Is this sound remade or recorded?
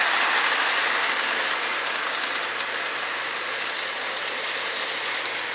recorded